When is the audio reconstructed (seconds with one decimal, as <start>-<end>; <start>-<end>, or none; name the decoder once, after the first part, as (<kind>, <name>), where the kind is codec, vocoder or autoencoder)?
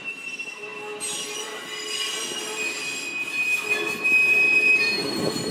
0.0-0.7 (vocoder, BigVGAN v2); 4.0-5.5